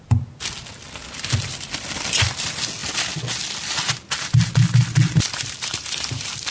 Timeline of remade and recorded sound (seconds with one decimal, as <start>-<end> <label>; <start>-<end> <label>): 0.0-1.0 recorded; 1.0-2.3 remade; 2.3-6.5 recorded